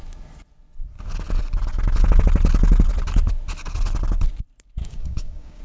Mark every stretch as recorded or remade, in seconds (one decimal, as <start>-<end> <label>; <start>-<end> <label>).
0.0-4.8 recorded; 4.8-5.6 remade